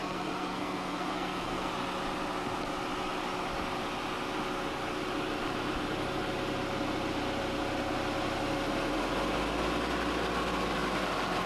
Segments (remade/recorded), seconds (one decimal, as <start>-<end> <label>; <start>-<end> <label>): 0.0-1.7 remade; 1.7-11.5 recorded

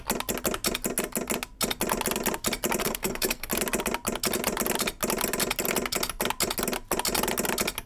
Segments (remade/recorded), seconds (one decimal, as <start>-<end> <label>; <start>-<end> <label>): 0.0-2.8 recorded; 2.8-3.5 remade; 3.5-7.9 recorded

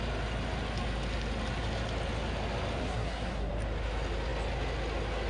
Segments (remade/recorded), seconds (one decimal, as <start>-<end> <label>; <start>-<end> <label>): 0.0-2.8 recorded; 2.8-3.5 remade; 3.5-5.3 recorded